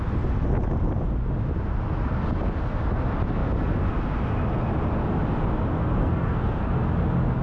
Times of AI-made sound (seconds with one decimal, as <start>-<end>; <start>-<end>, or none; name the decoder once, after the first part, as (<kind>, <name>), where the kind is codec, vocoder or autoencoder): 6.0-6.7 (codec, SNAC)